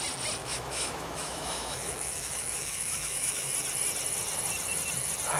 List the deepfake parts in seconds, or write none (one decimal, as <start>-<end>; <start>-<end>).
0.4-3.5